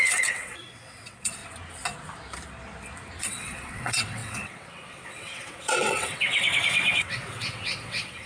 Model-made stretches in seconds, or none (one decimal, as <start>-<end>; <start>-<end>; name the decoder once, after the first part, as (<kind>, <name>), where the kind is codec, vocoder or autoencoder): 0.0-1.4 (vocoder, WaveNeXt); 3.2-8.3